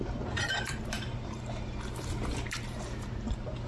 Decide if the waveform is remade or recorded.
remade